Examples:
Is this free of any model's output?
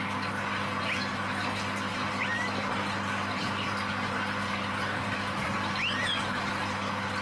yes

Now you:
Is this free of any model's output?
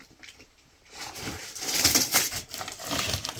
no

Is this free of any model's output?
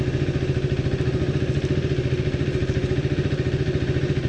yes